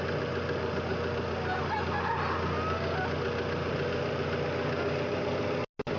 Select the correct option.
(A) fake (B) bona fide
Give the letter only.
B